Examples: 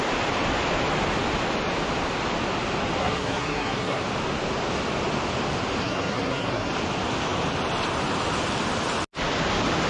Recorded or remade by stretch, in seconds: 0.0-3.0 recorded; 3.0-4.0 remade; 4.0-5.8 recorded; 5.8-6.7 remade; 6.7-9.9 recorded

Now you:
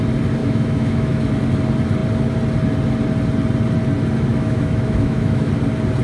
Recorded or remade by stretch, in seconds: 0.0-0.4 recorded; 0.4-1.3 remade; 1.3-4.3 recorded; 4.3-5.5 remade; 5.5-6.0 recorded

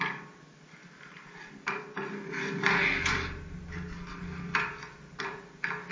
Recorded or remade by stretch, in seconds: 0.0-5.9 recorded

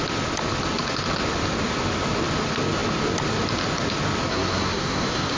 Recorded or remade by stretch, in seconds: 0.0-4.3 recorded; 4.3-5.4 remade

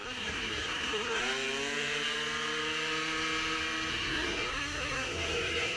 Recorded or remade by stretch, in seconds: 0.0-1.2 remade; 1.2-3.9 recorded; 3.9-5.8 remade

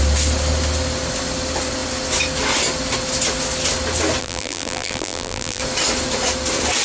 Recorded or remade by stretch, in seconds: 0.0-4.2 recorded; 4.2-5.6 remade; 5.6-6.8 recorded

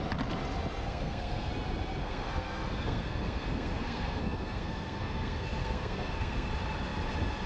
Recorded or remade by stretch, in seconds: 0.0-0.8 recorded; 0.8-1.5 remade; 1.5-2.0 recorded; 2.0-6.5 remade; 6.5-7.5 recorded

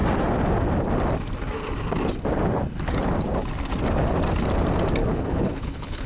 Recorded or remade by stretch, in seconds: 0.0-5.0 recorded; 5.0-6.1 remade